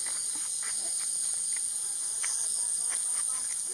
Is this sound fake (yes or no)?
no